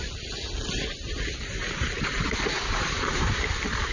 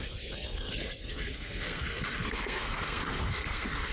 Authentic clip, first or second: first